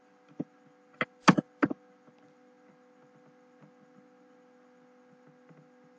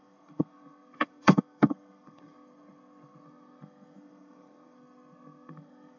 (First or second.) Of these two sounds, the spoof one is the second